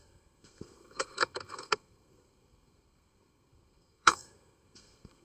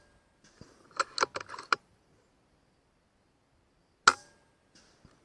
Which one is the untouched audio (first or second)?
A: second